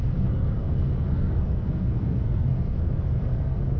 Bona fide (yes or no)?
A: no